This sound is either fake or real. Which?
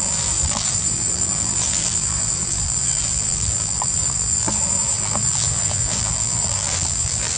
fake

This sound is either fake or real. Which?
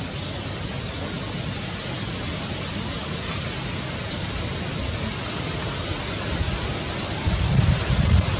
real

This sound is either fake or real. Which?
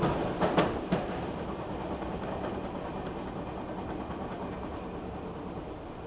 real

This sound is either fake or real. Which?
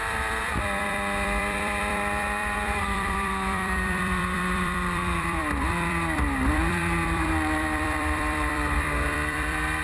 fake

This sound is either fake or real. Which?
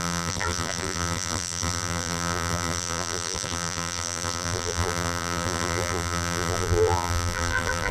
fake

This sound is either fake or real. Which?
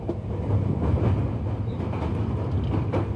real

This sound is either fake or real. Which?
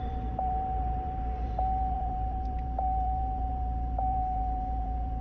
fake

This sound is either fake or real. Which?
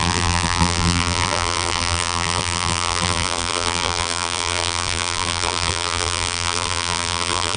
fake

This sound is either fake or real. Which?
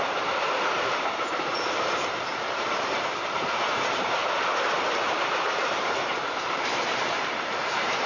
fake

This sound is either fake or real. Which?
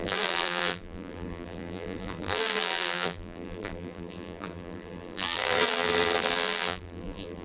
fake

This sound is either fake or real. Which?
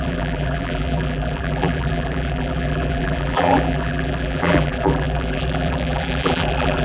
fake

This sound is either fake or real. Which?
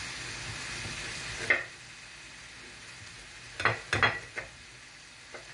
real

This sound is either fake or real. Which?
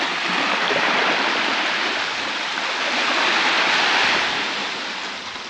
real